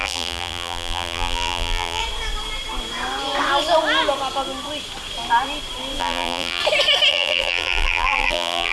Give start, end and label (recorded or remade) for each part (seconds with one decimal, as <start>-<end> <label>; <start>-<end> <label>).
0.0-2.0 remade; 2.0-6.0 recorded; 6.0-6.6 remade; 6.6-7.1 recorded; 7.1-8.7 remade